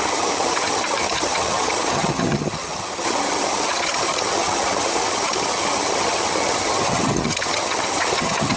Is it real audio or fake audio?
fake